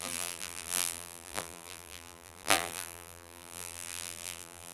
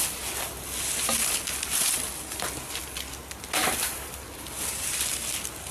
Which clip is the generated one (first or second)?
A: first